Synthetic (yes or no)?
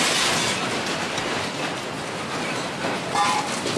no